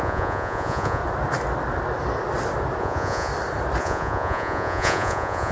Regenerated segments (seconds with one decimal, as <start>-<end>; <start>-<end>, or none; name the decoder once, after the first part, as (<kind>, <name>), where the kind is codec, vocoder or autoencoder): 0.0-1.0 (vocoder, Vocos); 2.8-3.3; 3.8-5.5